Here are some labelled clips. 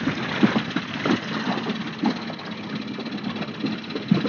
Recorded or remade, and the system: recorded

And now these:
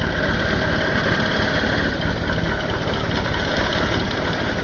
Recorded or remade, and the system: recorded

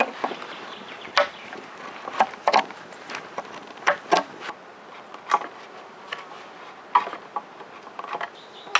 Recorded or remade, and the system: recorded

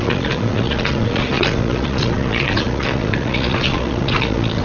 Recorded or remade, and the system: remade, vocoder, Vocos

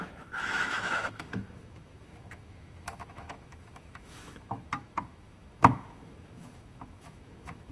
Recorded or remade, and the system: remade, autoencoder, DAC-VAE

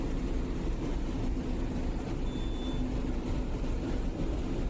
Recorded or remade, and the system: recorded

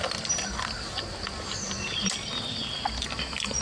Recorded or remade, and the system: recorded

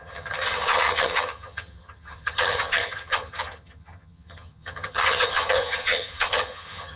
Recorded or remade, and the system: remade, vocoder, HiFi-GAN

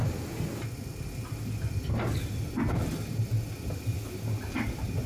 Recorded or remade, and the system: recorded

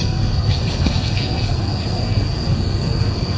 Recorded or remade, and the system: remade, codec, SNAC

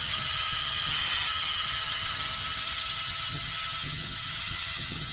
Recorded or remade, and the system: remade, vocoder, HiFi-GAN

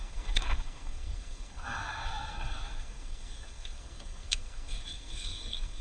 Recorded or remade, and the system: remade, codec, SNAC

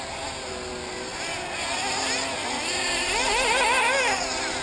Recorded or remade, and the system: recorded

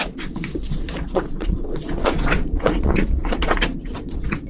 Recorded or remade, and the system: remade, vocoder, Vocos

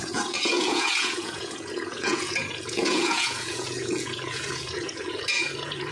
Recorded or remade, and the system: remade, vocoder, Vocos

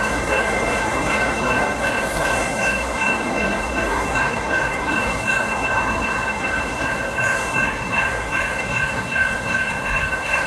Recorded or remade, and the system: remade, codec, SNAC